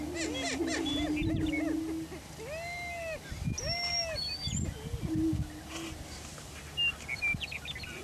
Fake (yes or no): no